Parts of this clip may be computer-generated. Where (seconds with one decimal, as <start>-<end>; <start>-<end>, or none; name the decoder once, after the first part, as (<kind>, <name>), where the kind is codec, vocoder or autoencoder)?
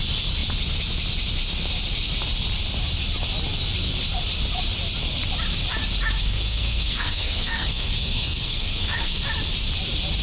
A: 6.2-9.2 (codec, SNAC)